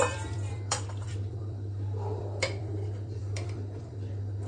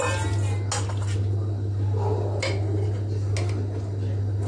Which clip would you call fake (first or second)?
first